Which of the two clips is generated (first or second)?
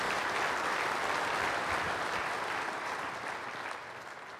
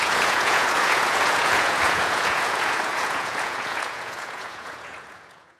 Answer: second